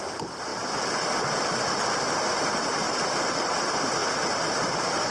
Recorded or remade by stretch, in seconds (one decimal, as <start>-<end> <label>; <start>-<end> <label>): 0.0-4.0 recorded; 4.0-4.6 remade; 4.6-5.1 recorded